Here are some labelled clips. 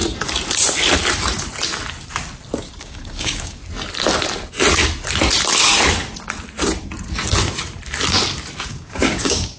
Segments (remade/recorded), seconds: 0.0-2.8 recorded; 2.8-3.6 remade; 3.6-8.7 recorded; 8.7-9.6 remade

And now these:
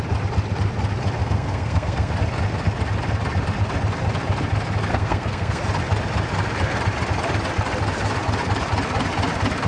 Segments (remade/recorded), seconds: 0.0-1.2 recorded; 1.2-2.1 remade; 2.1-4.9 recorded; 4.9-5.6 remade; 5.6-9.7 recorded

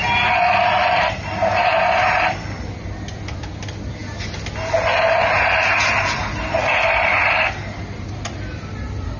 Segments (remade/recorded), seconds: 0.0-9.2 recorded

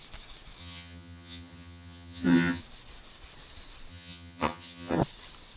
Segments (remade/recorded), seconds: 0.0-0.6 recorded; 0.6-2.6 remade; 2.6-3.9 recorded; 3.9-5.0 remade; 5.0-5.6 recorded

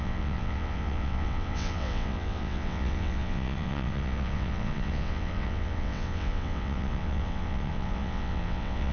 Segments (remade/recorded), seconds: 0.0-8.9 remade